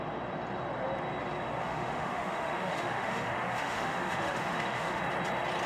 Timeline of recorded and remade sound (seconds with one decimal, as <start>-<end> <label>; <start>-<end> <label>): 0.0-1.6 recorded; 1.6-5.0 remade; 5.0-5.7 recorded